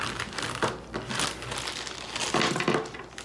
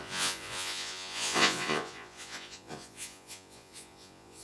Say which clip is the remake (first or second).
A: second